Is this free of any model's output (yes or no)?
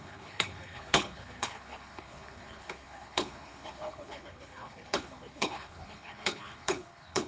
no